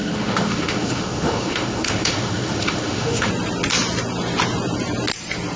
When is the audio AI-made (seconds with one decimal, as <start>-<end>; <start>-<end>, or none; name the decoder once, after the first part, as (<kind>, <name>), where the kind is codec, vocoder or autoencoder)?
0.0-3.3 (autoencoder, DAC-VAE)